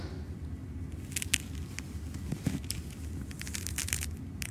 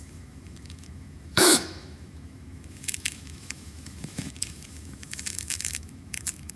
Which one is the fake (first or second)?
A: second